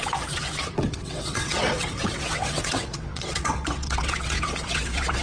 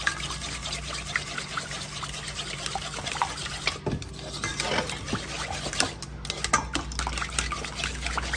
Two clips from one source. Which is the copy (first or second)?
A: first